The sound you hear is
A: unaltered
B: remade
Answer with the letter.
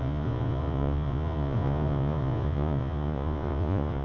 B